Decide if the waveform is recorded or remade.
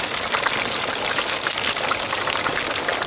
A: recorded